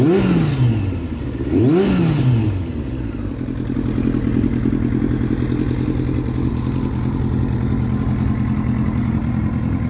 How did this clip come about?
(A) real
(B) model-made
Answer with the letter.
A